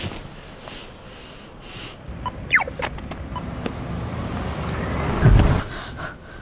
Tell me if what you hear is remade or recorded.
recorded